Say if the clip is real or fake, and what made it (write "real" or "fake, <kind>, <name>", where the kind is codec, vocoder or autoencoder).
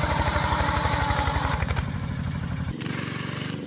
fake, vocoder, BigVGAN v2